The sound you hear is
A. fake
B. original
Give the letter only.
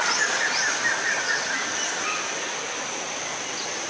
B